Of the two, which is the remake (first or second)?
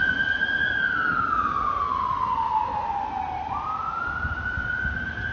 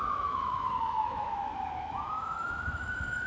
second